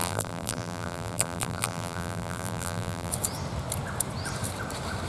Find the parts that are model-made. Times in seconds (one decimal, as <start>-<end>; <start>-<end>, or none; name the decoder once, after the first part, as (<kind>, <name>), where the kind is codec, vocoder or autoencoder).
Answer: 0.0-3.1 (vocoder, BigVGAN v2)